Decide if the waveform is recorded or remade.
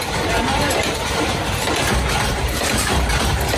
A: remade